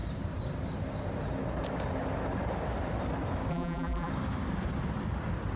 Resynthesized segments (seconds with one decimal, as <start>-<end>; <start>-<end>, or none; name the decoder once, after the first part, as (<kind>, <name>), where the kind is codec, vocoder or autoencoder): 3.5-4.1 (vocoder, BigVGAN v2)